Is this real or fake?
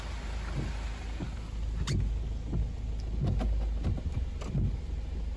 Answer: real